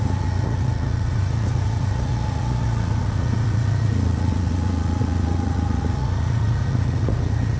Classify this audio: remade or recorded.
remade